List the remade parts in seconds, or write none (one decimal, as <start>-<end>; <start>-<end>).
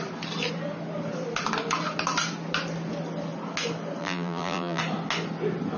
4.0-4.8